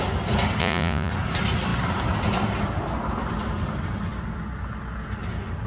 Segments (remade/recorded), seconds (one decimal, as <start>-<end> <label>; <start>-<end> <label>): 0.0-0.6 recorded; 0.6-1.1 remade; 1.1-5.7 recorded